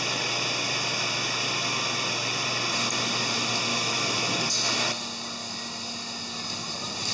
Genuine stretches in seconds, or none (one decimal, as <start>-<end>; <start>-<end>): 0.0-3.7; 4.3-7.1